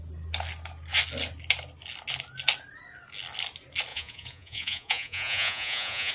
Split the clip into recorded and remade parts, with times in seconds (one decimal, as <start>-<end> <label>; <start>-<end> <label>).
0.0-3.9 recorded; 3.9-6.1 remade